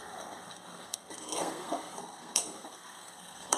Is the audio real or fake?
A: fake